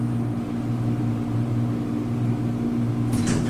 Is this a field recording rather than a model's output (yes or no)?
yes